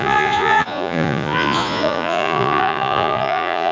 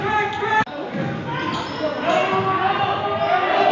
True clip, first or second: second